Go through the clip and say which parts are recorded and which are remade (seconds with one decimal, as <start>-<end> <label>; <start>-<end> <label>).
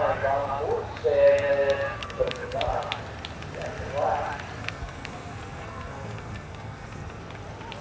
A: 0.0-2.0 recorded; 2.0-2.6 remade; 2.6-4.6 recorded; 4.6-7.2 remade; 7.2-7.8 recorded